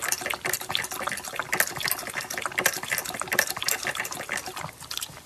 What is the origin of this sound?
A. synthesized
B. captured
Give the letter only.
B